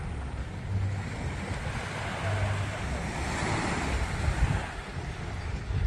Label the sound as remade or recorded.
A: recorded